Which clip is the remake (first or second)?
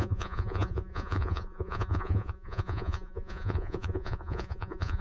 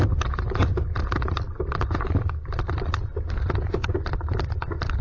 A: first